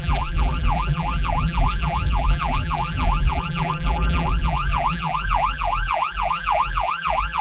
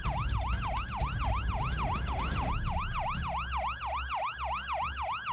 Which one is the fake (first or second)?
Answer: first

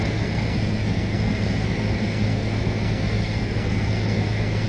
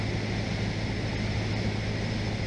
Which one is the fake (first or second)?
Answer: first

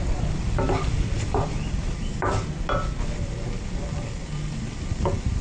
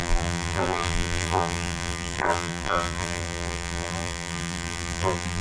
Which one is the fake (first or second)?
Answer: second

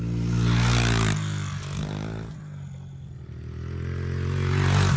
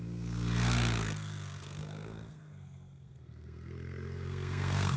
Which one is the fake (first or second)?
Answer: second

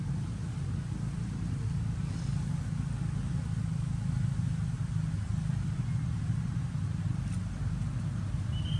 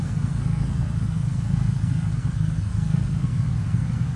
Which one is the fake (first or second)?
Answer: second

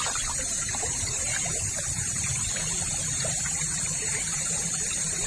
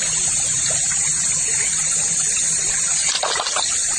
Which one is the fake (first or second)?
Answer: first